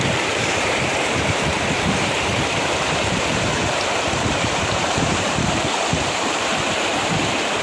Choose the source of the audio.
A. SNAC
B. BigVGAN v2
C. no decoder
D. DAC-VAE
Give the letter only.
B